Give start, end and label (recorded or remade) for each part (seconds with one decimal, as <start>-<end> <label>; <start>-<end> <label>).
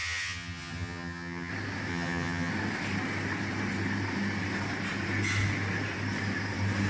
0.0-1.5 remade; 1.5-1.9 recorded; 1.9-2.5 remade; 2.5-6.9 recorded